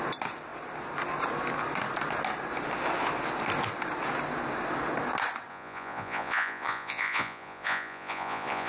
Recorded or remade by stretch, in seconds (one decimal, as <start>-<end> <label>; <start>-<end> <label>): 0.0-5.5 recorded; 5.5-8.7 remade